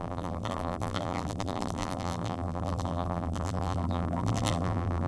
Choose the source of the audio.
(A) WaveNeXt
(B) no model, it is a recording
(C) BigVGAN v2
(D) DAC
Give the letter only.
C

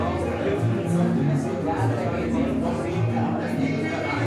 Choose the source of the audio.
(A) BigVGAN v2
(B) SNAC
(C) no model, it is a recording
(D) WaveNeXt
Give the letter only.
C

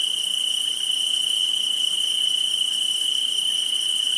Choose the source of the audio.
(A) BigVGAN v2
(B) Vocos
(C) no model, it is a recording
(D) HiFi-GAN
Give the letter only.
C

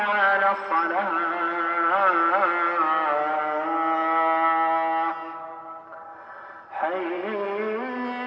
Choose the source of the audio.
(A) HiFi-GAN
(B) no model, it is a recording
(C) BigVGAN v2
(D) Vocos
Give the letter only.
B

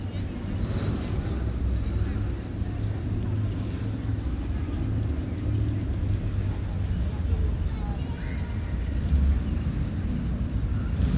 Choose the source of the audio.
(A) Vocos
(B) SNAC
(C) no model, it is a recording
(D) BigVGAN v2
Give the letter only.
C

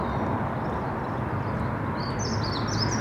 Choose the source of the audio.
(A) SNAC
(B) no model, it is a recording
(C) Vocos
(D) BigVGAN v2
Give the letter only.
B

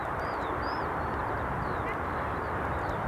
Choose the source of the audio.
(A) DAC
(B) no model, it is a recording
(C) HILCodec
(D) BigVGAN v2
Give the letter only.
D